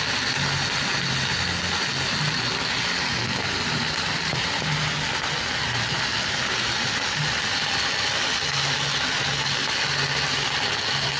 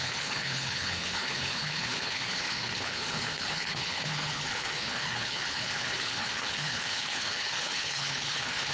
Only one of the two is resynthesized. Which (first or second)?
second